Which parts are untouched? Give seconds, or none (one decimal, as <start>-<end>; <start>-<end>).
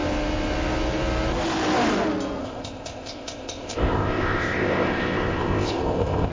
0.0-2.4